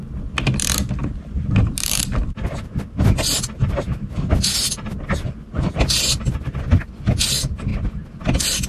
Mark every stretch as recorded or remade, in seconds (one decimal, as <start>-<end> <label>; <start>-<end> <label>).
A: 0.0-1.0 recorded; 1.0-2.0 remade; 2.0-8.7 recorded